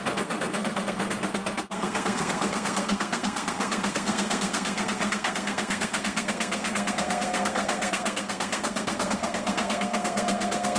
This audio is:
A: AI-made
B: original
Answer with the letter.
A